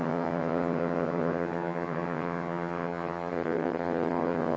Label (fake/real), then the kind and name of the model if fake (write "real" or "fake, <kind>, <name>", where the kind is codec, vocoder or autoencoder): fake, vocoder, HiFi-GAN